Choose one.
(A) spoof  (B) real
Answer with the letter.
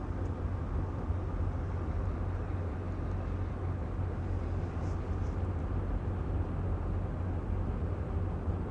B